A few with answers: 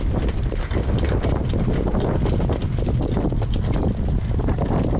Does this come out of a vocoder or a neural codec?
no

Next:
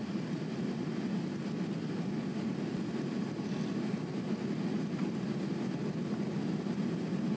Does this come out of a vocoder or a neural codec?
no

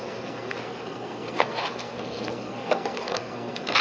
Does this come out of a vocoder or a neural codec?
yes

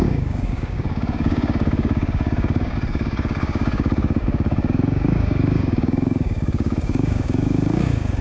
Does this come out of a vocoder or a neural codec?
yes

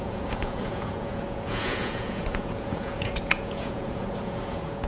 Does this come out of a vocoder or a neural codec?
yes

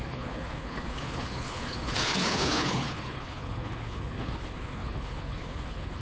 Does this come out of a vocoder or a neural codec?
yes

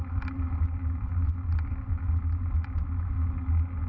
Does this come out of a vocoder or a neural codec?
no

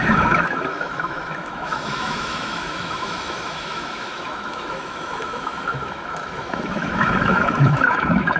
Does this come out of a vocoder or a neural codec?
yes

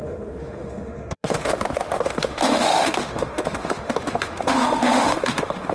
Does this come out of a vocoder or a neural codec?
yes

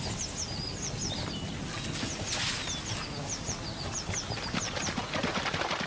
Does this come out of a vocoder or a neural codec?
no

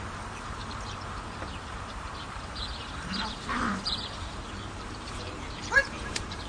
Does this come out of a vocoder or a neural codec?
yes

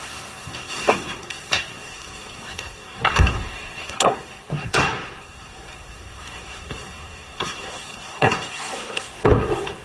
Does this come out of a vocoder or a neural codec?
yes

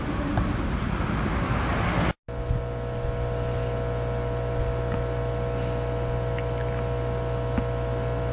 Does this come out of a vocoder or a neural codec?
no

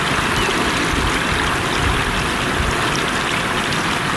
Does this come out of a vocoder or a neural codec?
no